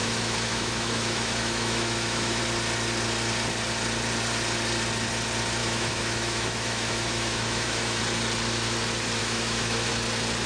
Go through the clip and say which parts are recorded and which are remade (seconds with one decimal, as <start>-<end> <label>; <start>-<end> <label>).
0.0-2.4 remade; 2.4-5.6 recorded; 5.6-8.0 remade; 8.0-9.2 recorded; 9.2-9.9 remade; 9.9-10.5 recorded